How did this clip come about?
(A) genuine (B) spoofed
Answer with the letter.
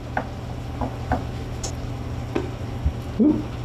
A